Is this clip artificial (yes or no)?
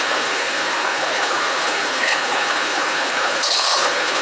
yes